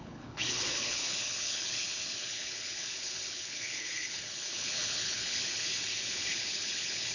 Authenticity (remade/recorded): remade